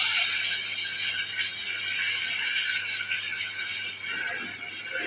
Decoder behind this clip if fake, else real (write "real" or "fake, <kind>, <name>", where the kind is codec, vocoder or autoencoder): real